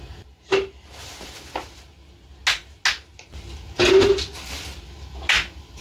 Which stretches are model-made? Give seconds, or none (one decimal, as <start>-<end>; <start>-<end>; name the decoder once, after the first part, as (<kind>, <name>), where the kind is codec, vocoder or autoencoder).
none